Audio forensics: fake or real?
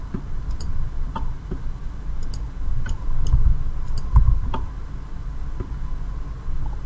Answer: real